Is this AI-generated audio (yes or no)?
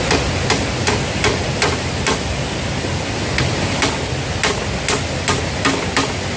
no